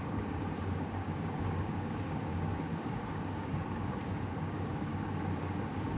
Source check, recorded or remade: remade